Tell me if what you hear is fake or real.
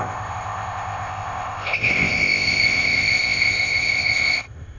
fake